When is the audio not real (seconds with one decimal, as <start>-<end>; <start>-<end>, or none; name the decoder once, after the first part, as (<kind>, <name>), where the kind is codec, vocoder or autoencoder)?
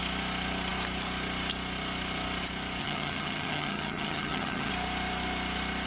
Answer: 2.8-4.7 (vocoder, HiFi-GAN)